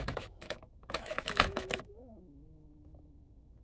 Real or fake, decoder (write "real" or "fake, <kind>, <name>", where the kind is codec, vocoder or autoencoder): fake, autoencoder, DAC-VAE